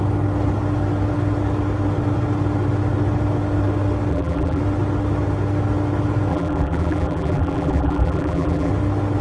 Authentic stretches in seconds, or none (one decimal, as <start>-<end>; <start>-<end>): 0.0-4.1; 4.6-6.3; 8.7-9.2